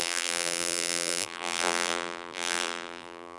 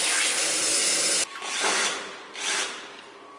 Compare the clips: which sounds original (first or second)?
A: second